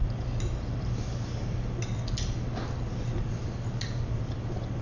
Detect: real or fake real